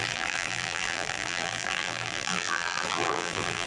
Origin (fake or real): fake